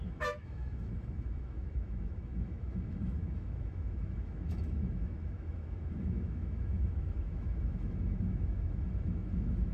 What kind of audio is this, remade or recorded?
remade